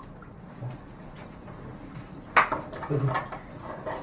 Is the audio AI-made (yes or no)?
no